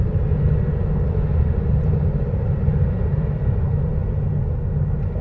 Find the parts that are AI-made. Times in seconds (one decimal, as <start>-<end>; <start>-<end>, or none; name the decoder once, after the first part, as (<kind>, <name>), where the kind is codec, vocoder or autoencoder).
0.8-3.9 (vocoder, BigVGAN v2)